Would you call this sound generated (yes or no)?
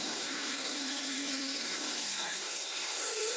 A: yes